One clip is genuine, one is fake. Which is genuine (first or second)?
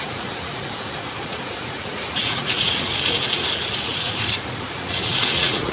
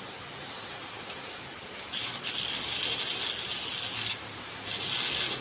second